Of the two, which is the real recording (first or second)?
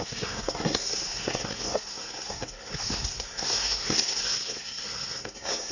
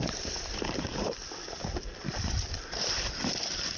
second